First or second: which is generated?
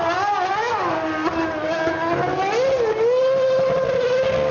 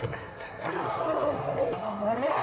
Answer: second